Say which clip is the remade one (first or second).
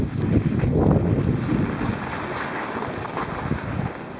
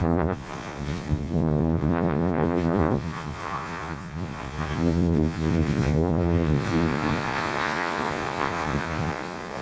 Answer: second